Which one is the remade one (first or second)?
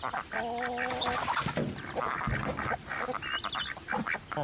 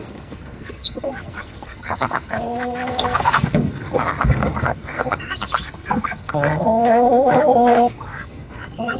second